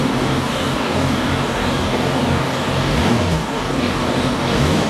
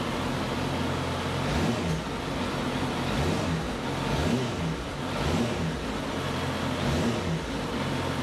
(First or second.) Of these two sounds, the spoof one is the first